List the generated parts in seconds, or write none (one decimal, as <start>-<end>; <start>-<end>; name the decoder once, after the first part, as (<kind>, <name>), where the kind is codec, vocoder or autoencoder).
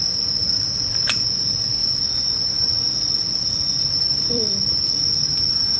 0.0-0.4 (vocoder, BigVGAN v2); 0.9-5.8